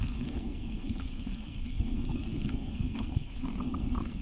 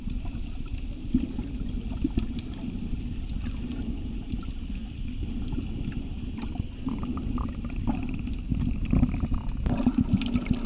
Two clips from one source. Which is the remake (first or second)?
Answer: first